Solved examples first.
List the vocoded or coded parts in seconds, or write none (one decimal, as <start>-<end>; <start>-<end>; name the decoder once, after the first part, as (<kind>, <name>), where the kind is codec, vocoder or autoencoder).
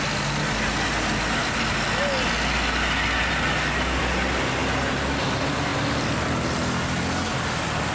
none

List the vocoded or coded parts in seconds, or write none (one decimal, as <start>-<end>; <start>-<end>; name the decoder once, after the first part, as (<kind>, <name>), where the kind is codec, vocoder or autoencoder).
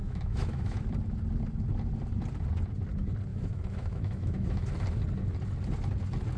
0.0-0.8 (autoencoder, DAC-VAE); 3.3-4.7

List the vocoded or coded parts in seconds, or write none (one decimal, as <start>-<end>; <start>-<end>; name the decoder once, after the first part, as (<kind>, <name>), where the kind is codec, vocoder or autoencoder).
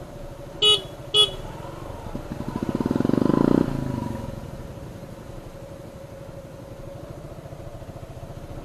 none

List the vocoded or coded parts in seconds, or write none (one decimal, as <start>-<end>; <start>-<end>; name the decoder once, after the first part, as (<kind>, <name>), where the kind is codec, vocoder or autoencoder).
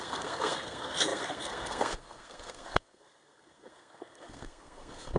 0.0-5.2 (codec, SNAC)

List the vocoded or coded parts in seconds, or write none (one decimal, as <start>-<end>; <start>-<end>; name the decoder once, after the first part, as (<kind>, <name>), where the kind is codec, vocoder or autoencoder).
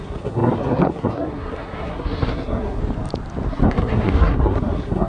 0.0-2.8 (codec, SNAC); 3.5-5.1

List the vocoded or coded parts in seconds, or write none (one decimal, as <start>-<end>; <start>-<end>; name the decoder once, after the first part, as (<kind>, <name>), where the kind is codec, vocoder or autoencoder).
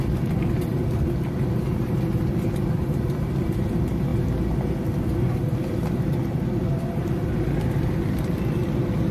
none